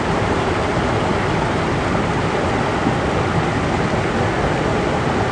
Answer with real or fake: real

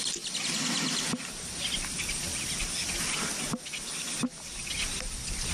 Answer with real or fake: real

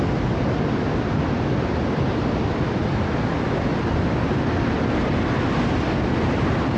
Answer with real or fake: real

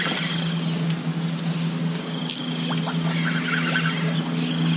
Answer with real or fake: real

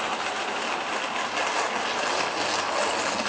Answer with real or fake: real